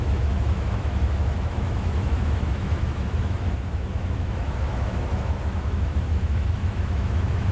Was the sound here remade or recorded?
remade